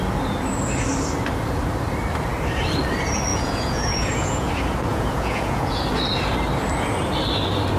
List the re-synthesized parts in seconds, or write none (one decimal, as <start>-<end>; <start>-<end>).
3.3-4.5; 4.9-5.8